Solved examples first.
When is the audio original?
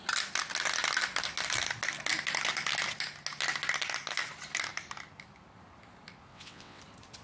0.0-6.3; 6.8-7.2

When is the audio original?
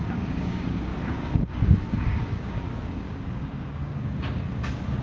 none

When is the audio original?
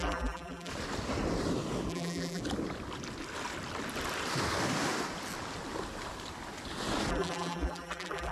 0.7-1.9; 2.4-7.1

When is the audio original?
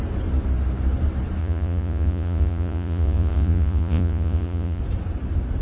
0.0-1.4; 4.8-5.6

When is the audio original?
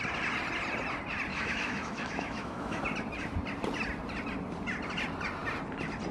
0.0-1.3; 2.8-6.1